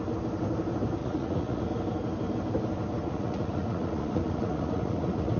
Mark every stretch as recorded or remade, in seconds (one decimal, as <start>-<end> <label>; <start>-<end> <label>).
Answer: 0.0-1.0 recorded; 1.0-1.6 remade; 1.6-3.0 recorded; 3.0-5.4 remade